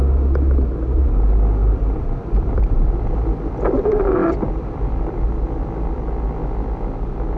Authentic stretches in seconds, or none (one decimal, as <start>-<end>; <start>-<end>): 0.0-1.6; 3.5-4.2; 6.3-7.4